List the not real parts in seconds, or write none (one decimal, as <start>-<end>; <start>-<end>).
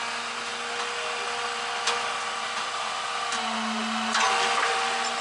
none